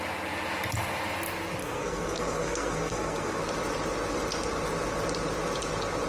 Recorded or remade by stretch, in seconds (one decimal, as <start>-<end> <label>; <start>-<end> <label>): 0.0-1.6 recorded; 1.6-3.4 remade; 3.4-6.1 recorded